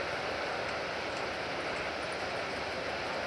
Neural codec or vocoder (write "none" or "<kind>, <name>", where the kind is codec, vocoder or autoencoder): none